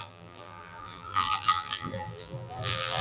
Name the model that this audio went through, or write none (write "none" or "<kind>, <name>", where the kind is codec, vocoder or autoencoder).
vocoder, BigVGAN v2